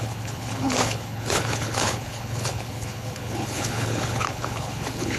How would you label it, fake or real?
fake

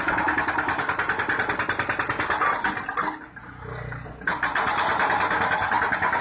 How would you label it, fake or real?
real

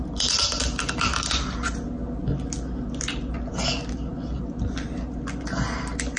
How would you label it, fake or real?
real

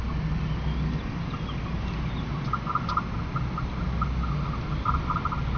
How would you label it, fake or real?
real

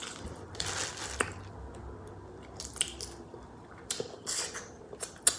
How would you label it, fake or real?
real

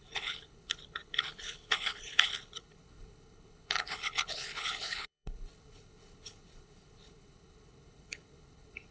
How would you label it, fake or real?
fake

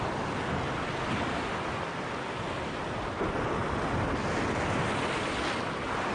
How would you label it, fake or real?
real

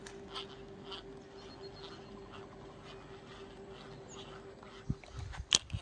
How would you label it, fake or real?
real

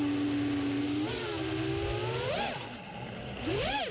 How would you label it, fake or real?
real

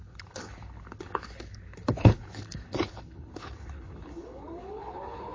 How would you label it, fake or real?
fake